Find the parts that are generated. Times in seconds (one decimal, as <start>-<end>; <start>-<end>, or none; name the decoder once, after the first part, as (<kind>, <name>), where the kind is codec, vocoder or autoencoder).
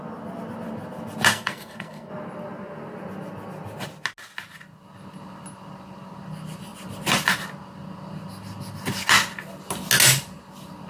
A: 1.3-2.1 (codec, SNAC)